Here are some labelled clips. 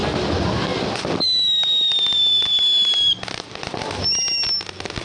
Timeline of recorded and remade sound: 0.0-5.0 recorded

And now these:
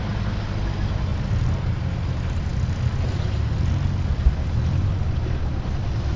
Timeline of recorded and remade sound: 0.0-6.2 recorded

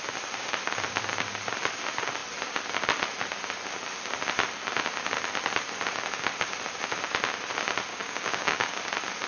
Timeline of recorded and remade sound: 0.0-7.9 recorded; 7.9-8.8 remade; 8.8-9.3 recorded

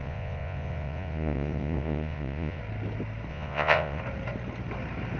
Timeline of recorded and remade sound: 0.0-2.6 remade; 2.6-3.3 recorded; 3.3-4.0 remade; 4.0-5.2 recorded

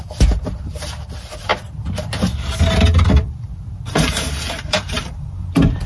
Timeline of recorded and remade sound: 0.0-1.5 remade; 1.5-2.6 recorded; 2.6-5.9 remade

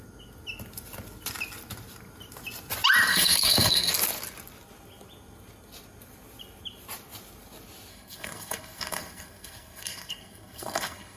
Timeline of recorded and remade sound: 0.0-3.1 recorded; 3.1-3.9 remade; 3.9-7.9 recorded; 7.9-11.2 remade

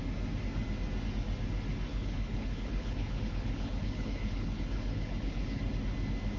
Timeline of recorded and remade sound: 0.0-1.9 recorded; 1.9-5.7 remade; 5.7-6.4 recorded